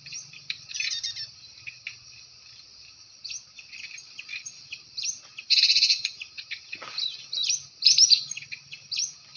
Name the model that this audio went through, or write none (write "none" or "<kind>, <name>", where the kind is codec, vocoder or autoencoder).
vocoder, BigVGAN v2